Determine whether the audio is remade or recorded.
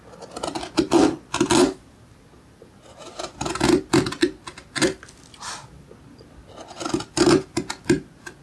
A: recorded